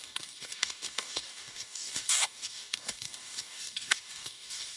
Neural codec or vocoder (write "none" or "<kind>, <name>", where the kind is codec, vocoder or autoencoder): codec, DAC